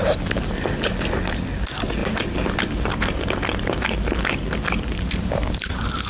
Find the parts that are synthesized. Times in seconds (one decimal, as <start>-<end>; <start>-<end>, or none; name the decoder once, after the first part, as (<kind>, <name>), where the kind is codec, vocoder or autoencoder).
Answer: none